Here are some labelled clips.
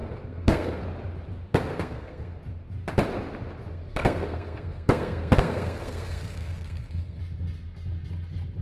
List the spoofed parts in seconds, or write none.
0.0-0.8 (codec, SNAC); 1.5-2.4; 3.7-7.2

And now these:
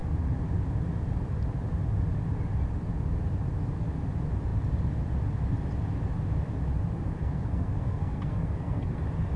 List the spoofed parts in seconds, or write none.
7.2-9.0 (codec, SNAC)

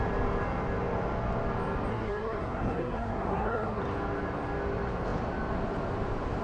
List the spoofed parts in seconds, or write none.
1.9-3.8 (codec, SNAC)

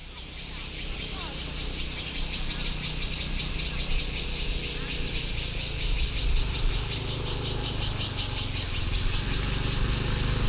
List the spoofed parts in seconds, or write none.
none

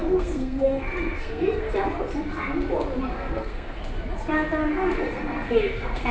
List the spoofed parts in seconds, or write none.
0.0-1.7 (codec, SNAC); 3.1-3.8; 4.6-6.1

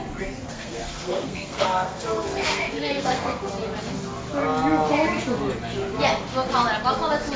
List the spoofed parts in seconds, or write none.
0.4-3.5 (codec, SNAC)